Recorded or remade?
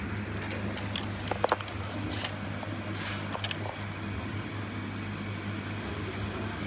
recorded